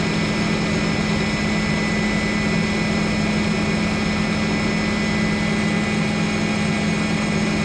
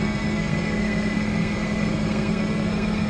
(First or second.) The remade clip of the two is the second